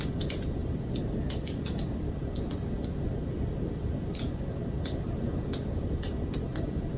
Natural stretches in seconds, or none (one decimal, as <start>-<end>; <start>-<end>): 0.0-7.0

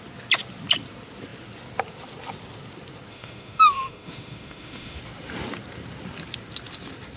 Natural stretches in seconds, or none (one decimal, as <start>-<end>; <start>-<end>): 0.0-3.1; 5.0-7.2

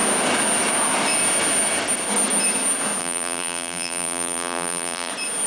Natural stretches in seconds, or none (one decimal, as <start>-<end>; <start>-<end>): 0.0-3.0; 5.1-5.5

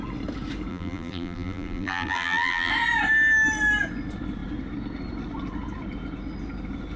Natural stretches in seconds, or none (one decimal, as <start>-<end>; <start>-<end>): 0.0-0.7; 2.7-7.0

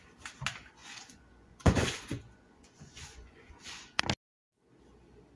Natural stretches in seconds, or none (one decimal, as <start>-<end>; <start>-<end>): 0.0-0.8; 4.0-5.4